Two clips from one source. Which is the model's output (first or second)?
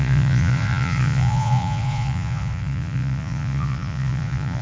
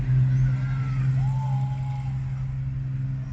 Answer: first